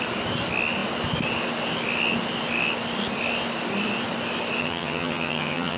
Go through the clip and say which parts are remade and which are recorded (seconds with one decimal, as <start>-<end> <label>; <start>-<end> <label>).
0.0-4.6 recorded; 4.6-5.8 remade